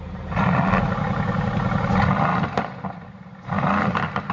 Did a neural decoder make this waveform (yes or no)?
no